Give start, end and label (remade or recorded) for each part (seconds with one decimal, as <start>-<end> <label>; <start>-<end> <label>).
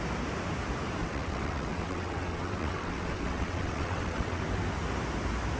0.0-1.0 recorded; 1.0-4.4 remade; 4.4-5.6 recorded